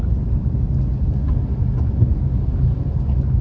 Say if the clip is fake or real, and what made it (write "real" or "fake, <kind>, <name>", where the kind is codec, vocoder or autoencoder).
real